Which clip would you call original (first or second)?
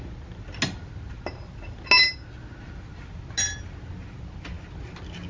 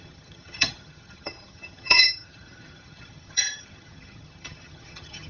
first